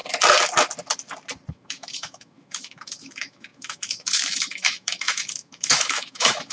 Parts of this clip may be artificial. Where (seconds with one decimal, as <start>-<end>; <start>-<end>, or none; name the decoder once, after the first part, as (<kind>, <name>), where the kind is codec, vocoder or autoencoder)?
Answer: 1.5-6.5 (autoencoder, DAC-VAE)